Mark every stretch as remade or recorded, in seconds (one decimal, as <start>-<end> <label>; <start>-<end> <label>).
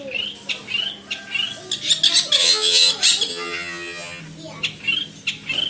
0.0-2.4 recorded; 2.4-2.9 remade; 2.9-3.3 recorded; 3.3-4.2 remade; 4.2-5.7 recorded